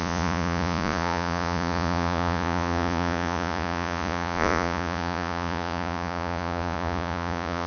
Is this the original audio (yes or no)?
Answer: no